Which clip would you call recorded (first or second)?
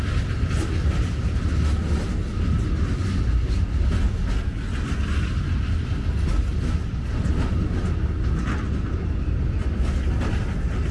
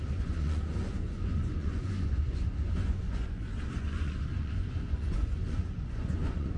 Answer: first